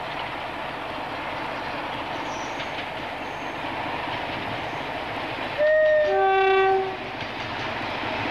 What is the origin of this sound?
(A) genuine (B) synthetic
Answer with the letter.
A